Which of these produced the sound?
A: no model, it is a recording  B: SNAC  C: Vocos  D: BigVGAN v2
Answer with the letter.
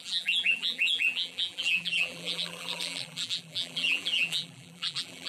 D